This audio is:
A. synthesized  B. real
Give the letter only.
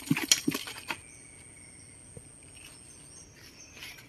B